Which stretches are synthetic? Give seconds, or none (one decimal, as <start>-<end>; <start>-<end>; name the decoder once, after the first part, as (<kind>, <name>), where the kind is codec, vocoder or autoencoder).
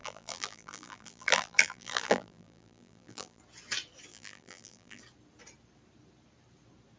0.0-3.4 (vocoder, BigVGAN v2); 4.1-5.0